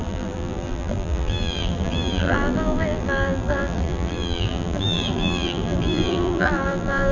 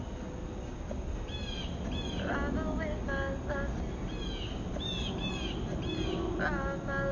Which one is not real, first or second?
first